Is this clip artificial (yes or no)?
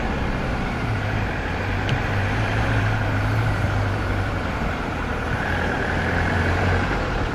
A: yes